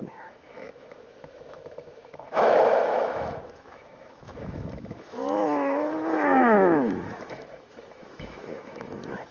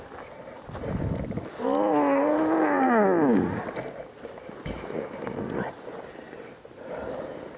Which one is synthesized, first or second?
first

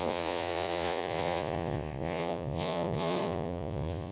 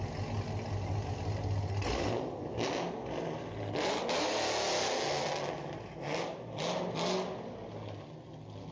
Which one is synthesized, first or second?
first